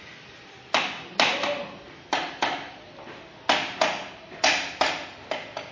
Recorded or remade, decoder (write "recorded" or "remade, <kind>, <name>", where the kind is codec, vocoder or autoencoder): recorded